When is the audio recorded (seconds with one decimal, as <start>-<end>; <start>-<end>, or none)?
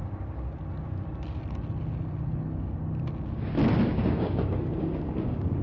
0.6-3.9